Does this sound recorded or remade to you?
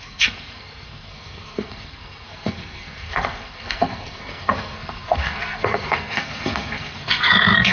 remade